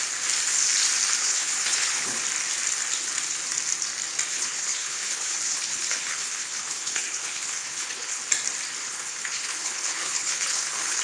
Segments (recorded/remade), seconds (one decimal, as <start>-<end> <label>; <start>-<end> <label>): 0.0-1.2 recorded; 1.2-2.2 remade; 2.2-4.3 recorded; 4.3-8.2 remade; 8.2-8.8 recorded; 8.8-11.0 remade